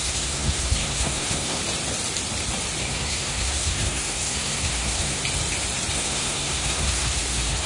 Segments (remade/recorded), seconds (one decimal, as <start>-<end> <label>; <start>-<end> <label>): 0.0-1.6 remade; 1.6-2.8 recorded; 2.8-5.2 remade; 5.2-5.9 recorded; 5.9-7.7 remade